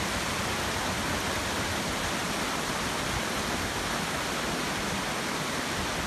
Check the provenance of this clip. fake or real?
real